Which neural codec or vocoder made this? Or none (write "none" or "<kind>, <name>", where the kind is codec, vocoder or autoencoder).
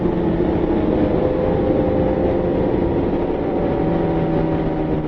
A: none